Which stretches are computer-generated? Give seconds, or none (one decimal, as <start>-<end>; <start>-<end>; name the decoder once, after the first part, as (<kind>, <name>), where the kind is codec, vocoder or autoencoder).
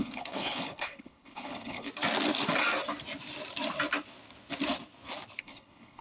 0.0-1.9 (codec, HILCodec); 5.4-6.0